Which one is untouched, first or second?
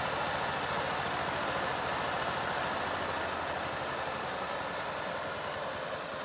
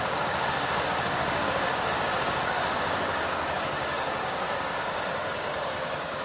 first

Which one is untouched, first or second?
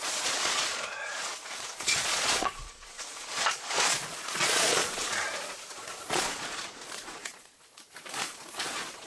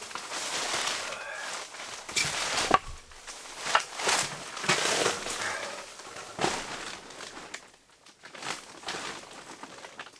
second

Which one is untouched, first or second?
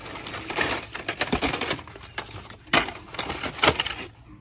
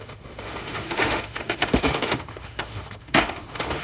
first